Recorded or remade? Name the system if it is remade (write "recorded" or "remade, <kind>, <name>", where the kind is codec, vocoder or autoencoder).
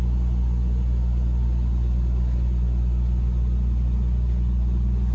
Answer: recorded